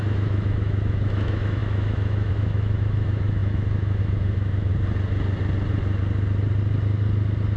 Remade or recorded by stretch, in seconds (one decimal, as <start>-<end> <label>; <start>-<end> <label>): 0.0-4.7 remade; 4.7-7.6 recorded